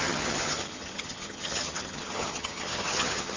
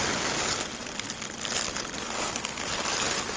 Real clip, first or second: second